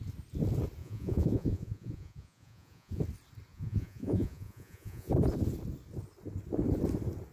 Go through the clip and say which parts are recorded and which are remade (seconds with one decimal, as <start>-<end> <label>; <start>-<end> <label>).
0.0-0.8 recorded; 0.8-3.0 remade; 3.0-3.5 recorded; 3.5-5.1 remade; 5.1-7.3 recorded